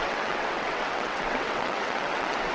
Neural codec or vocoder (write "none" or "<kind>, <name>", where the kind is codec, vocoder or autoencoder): vocoder, WaveNeXt